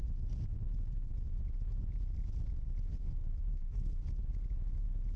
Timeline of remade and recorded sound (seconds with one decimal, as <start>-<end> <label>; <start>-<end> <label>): 0.0-3.0 recorded; 3.0-3.9 remade; 3.9-5.2 recorded